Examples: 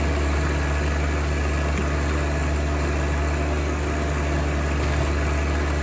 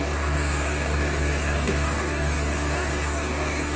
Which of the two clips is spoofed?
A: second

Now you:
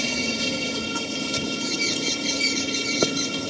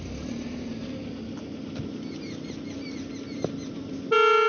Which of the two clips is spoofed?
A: first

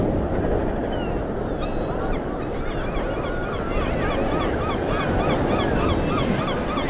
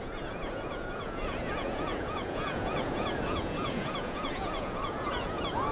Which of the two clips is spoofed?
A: second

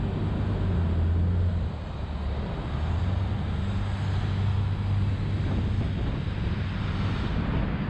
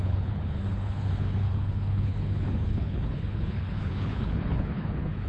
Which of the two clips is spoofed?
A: second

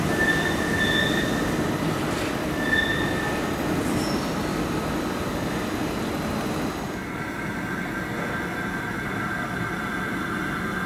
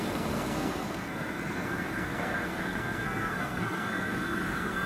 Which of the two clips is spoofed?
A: second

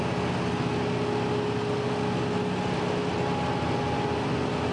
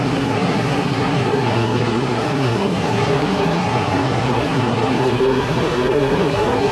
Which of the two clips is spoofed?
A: second